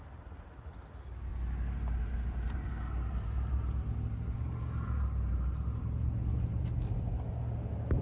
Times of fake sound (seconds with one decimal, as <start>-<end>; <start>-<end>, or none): none